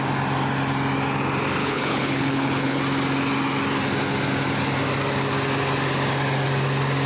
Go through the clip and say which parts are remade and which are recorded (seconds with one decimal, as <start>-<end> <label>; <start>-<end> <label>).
0.0-1.6 recorded; 1.6-2.8 remade; 2.8-7.1 recorded